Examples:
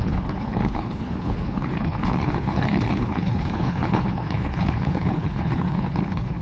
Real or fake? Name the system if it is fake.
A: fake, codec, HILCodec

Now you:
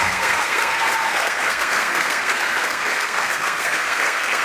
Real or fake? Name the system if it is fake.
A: fake, codec, SNAC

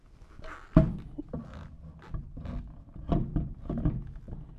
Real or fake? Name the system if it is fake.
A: real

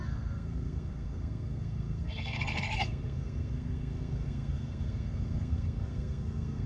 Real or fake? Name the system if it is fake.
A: fake, codec, SNAC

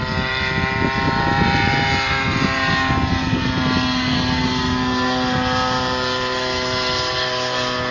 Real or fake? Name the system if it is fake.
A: real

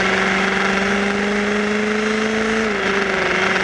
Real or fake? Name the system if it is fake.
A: real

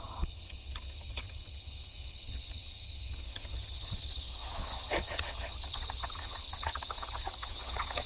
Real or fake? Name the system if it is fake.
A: fake, vocoder, HiFi-GAN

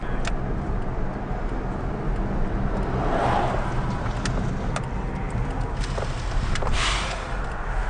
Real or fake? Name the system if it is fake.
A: real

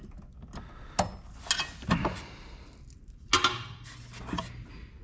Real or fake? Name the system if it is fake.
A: real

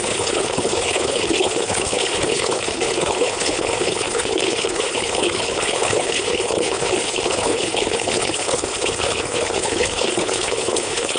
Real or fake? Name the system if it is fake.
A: fake, codec, HILCodec